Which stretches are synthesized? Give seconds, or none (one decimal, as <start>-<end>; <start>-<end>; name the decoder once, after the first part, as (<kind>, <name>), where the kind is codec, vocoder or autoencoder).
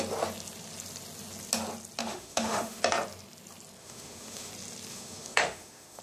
2.0-2.8 (autoencoder, DAC-VAE); 3.8-4.5; 4.9-6.0